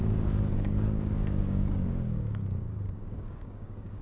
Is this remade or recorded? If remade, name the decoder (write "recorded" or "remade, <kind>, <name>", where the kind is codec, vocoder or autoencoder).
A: remade, codec, DAC